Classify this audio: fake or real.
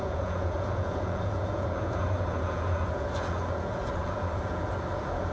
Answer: fake